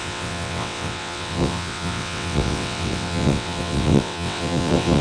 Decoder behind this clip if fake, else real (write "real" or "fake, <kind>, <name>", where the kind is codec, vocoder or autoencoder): fake, vocoder, WaveNeXt